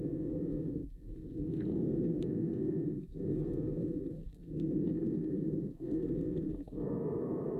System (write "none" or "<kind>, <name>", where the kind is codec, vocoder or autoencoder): codec, SNAC